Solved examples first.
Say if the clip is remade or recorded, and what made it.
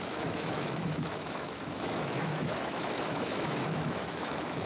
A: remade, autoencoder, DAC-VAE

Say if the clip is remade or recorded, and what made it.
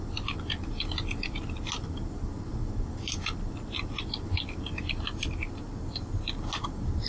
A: recorded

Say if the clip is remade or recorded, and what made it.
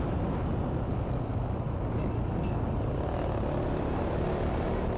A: recorded